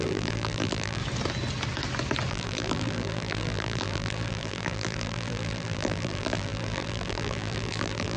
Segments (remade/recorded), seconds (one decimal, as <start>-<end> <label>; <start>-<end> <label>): 0.0-1.0 remade; 1.0-2.3 recorded; 2.3-8.2 remade